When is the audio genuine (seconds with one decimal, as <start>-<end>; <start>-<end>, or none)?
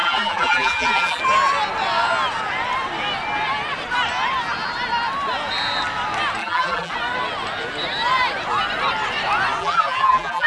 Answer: 1.2-6.4; 6.9-9.6